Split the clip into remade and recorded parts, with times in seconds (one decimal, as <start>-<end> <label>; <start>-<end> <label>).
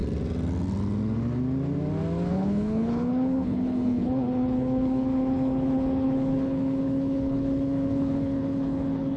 0.0-2.3 recorded; 2.3-9.2 remade